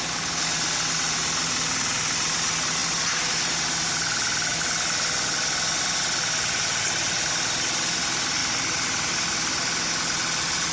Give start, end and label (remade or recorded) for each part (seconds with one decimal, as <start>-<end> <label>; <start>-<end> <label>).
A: 0.0-10.7 recorded